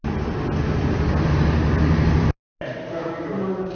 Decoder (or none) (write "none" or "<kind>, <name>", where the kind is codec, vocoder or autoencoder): none